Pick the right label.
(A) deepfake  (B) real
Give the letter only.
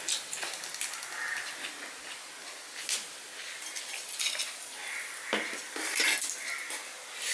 B